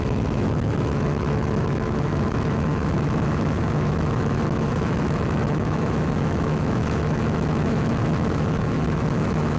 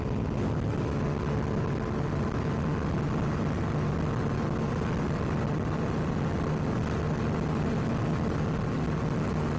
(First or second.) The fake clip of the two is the first